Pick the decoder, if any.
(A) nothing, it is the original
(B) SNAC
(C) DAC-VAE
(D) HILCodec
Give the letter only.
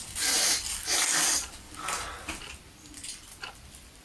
A